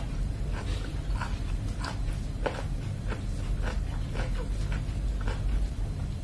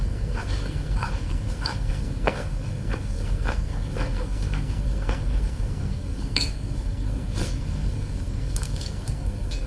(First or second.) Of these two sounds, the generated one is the second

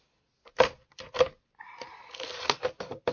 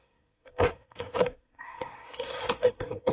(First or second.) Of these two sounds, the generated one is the second